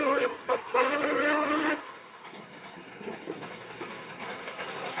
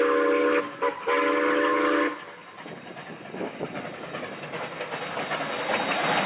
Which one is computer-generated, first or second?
first